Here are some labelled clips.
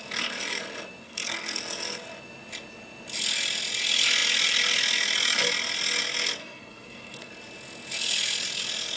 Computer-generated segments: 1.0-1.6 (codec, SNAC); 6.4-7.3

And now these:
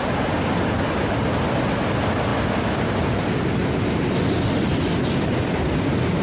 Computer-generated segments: none

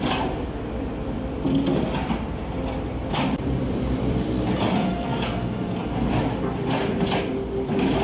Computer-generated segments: 0.0-5.1 (vocoder, BigVGAN v2); 6.1-8.0

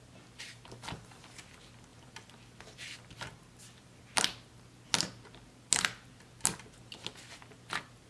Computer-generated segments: none

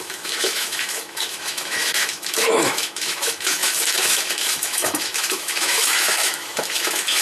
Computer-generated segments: 0.0-7.2 (autoencoder, DAC-VAE)